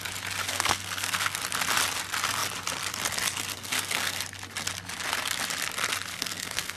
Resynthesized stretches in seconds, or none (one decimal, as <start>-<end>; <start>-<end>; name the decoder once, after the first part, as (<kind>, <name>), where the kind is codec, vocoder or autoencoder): 0.5-1.4 (codec, SNAC); 3.5-4.2; 6.1-6.8